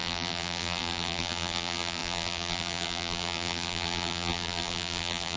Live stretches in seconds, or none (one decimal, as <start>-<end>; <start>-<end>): none